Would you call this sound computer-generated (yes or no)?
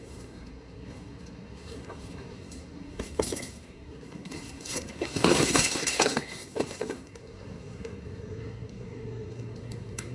yes